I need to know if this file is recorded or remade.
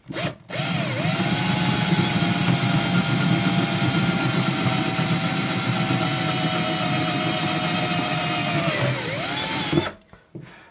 recorded